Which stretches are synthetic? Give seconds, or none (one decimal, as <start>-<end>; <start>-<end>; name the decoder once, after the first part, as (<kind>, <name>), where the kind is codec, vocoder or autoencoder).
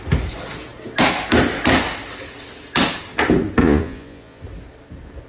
3.6-4.4 (vocoder, Vocos)